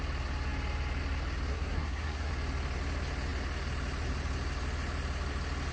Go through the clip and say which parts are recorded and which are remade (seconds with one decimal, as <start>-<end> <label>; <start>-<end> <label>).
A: 0.0-1.5 recorded; 1.5-2.3 remade; 2.3-5.7 recorded